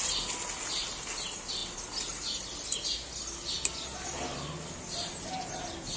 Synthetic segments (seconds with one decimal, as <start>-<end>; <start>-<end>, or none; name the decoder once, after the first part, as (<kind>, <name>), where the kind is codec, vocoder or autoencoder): none